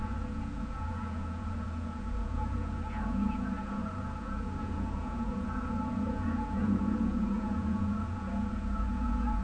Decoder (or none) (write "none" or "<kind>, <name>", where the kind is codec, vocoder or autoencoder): vocoder, Vocos